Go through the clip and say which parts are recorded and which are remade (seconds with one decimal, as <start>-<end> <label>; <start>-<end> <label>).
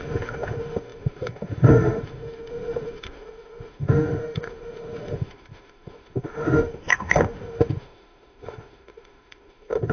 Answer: 0.0-9.9 remade